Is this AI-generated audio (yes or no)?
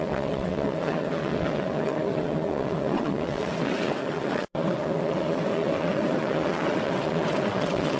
yes